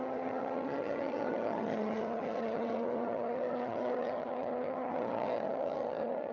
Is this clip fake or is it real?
fake